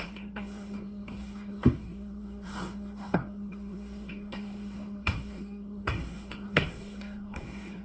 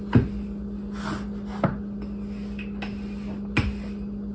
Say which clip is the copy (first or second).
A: first